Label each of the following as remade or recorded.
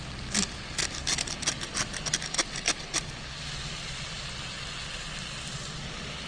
recorded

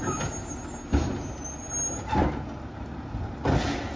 recorded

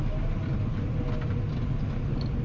recorded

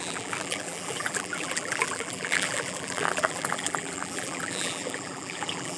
remade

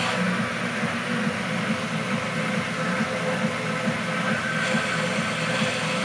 recorded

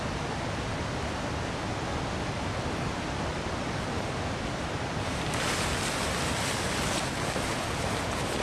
recorded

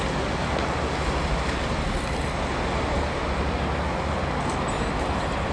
recorded